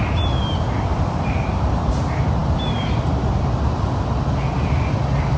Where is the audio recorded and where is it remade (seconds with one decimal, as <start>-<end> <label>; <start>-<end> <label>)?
0.0-0.9 recorded; 0.9-1.9 remade; 1.9-5.4 recorded